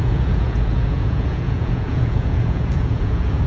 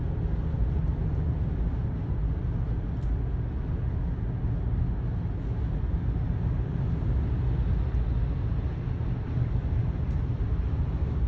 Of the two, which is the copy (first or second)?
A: first